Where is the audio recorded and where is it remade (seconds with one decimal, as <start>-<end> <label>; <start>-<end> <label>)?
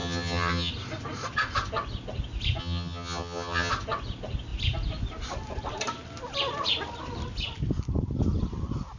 0.0-0.7 remade; 0.7-2.6 recorded; 2.6-3.7 remade; 3.7-9.0 recorded